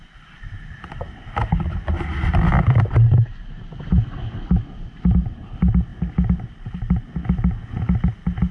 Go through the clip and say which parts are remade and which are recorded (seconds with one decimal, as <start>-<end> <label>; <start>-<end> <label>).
0.0-8.5 recorded